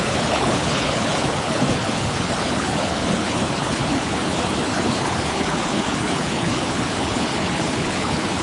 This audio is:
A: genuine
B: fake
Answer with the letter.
B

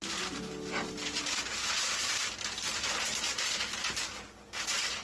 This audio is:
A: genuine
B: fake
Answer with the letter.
A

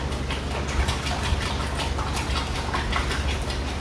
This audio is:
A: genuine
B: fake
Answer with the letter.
A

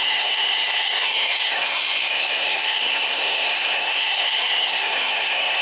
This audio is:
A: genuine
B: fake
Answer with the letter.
B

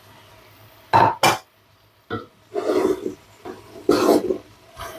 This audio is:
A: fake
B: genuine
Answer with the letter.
B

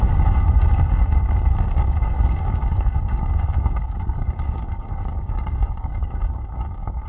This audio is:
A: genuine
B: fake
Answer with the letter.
B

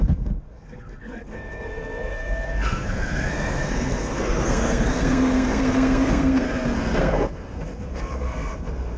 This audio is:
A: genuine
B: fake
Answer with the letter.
B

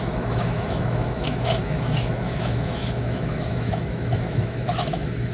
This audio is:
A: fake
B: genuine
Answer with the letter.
A